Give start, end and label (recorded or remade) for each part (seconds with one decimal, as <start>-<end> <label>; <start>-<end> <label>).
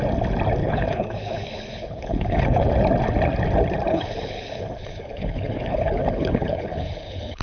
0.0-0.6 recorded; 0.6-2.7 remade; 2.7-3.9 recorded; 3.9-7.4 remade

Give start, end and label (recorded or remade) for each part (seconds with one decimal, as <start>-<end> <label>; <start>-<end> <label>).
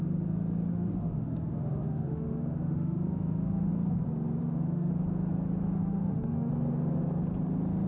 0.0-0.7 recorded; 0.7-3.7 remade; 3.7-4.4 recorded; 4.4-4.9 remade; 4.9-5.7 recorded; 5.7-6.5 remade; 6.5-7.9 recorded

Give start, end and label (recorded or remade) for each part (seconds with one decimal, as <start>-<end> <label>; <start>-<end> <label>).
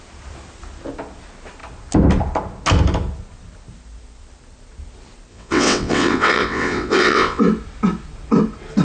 0.0-5.3 recorded; 5.3-7.4 remade; 7.4-8.8 recorded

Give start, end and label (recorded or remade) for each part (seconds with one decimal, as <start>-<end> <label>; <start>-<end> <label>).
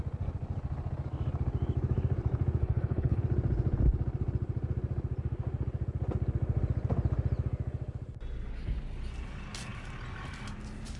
0.0-2.6 recorded; 2.6-3.2 remade; 3.2-11.0 recorded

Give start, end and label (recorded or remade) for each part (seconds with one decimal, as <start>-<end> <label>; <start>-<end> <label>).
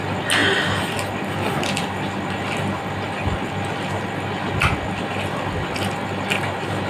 0.0-6.9 recorded